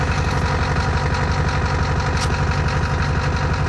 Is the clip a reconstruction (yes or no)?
no